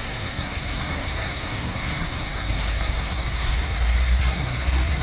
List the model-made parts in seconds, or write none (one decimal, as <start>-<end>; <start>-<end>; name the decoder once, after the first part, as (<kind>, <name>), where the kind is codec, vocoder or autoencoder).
0.0-5.0 (codec, SNAC)